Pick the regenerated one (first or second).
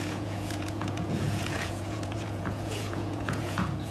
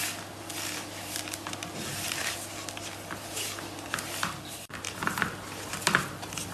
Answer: first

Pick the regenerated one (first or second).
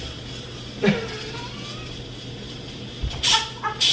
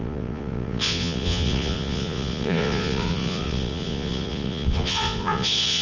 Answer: second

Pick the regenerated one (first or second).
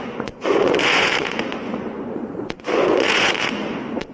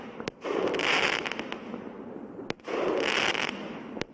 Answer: first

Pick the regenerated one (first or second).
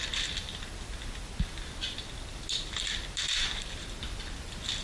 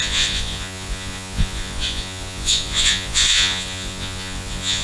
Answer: second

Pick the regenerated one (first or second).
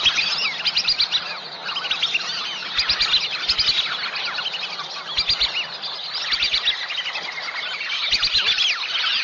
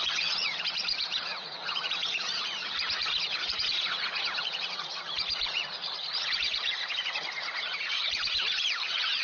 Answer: second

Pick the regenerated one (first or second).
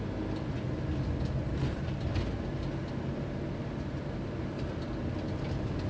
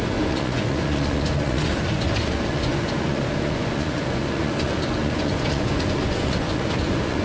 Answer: second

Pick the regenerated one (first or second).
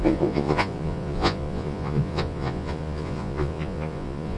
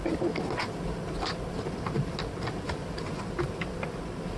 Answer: first